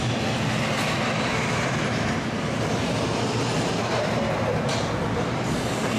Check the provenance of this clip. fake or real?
real